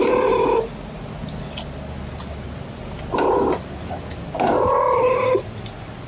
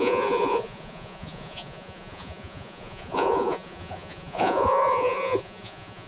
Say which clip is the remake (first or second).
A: second